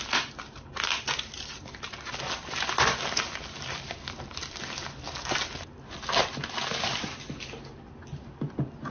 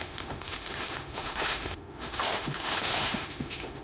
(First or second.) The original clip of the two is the first